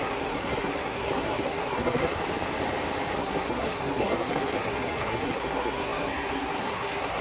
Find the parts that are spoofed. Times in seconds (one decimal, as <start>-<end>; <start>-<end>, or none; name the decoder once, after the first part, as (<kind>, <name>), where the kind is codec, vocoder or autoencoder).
0.0-2.2 (codec, SNAC); 3.2-7.2